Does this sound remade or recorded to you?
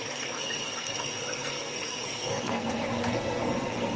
remade